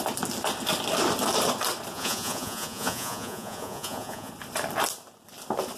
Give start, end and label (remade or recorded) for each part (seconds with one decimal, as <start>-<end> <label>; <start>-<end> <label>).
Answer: 0.0-1.9 recorded; 1.9-4.3 remade; 4.3-5.8 recorded